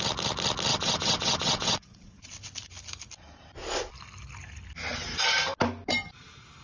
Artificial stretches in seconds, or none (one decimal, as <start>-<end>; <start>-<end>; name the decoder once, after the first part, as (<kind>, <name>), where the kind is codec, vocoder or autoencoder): 0.7-2.3 (vocoder, WaveNeXt)